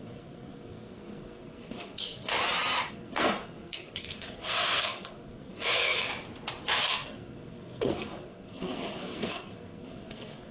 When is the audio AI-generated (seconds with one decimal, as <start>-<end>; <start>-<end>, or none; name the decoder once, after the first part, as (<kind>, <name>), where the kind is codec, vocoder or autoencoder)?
0.0-2.3 (codec, SNAC); 2.9-6.1; 6.8-10.5